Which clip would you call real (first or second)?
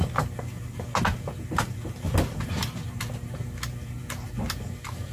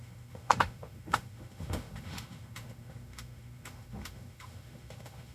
first